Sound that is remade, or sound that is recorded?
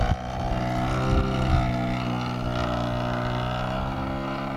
recorded